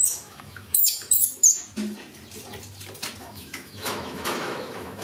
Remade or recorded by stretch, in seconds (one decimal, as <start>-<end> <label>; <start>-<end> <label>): 0.0-1.6 remade; 1.6-3.2 recorded; 3.2-5.0 remade